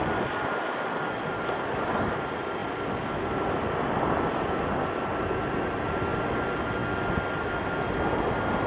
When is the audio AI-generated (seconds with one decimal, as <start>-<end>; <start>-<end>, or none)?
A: none

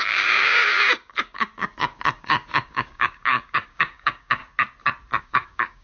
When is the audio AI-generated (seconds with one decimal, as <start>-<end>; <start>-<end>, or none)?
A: 0.0-4.4; 5.2-5.8

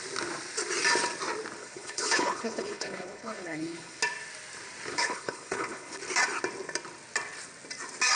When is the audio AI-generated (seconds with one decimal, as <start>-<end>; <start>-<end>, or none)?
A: 1.6-4.0; 4.9-6.0

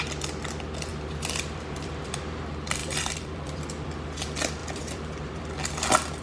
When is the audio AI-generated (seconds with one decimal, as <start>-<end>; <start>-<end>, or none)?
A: 0.9-2.4; 2.8-3.9; 4.6-5.5

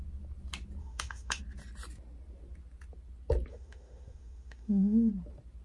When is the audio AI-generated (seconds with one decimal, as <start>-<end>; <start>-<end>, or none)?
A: 0.8-1.4; 3.5-5.1

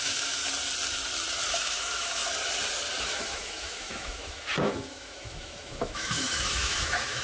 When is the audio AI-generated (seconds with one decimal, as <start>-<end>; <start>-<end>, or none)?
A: 0.0-0.4; 1.5-2.2; 3.0-7.2

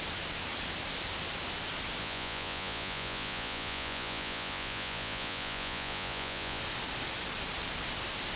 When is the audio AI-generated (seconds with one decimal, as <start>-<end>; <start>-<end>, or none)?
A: 2.0-6.6